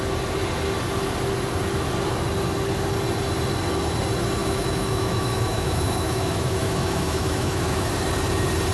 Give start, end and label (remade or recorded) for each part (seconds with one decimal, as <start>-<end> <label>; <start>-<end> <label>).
0.0-4.4 recorded; 4.4-7.9 remade; 7.9-8.7 recorded